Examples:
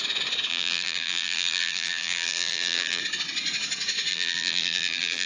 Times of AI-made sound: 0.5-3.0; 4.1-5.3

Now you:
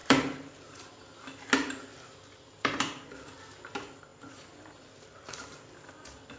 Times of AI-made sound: 0.0-1.0; 1.9-3.1

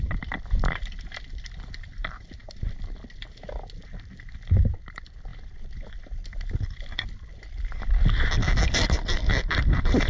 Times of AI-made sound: 0.0-2.4; 3.8-10.1

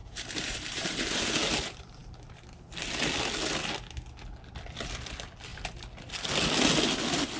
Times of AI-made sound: 0.0-1.3

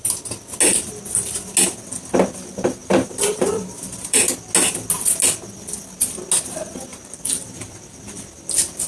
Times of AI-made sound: 2.8-4.3; 6.9-8.0

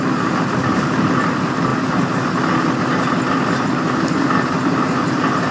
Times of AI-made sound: none

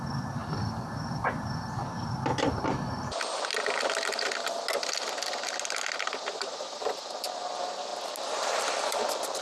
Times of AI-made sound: 0.0-1.8; 6.3-7.9; 8.5-9.4

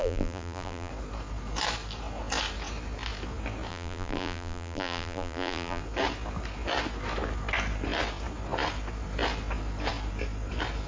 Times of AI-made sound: 0.0-0.9; 3.7-5.8